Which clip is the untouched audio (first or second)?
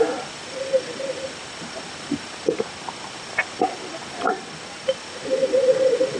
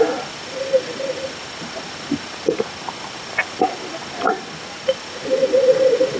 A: second